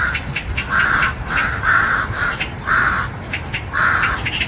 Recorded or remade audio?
remade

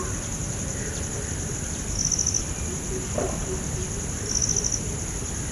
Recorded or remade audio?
recorded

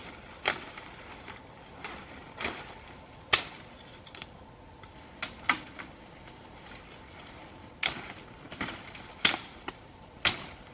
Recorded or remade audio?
recorded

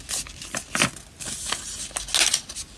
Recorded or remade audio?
recorded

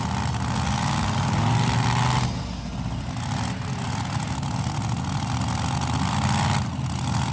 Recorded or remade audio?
recorded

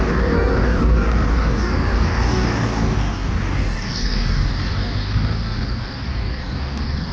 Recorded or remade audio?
remade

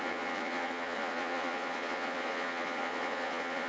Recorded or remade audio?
remade